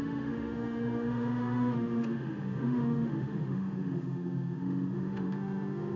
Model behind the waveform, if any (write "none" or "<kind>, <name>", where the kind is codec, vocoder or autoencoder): autoencoder, DAC-VAE